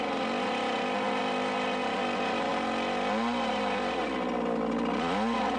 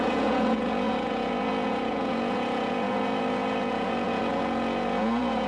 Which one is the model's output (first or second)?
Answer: second